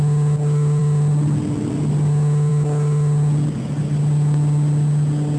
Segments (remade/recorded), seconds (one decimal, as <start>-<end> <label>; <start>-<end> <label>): 0.0-5.4 recorded